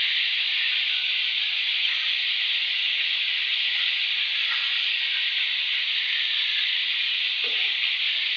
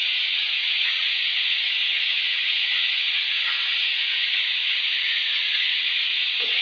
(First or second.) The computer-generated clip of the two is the second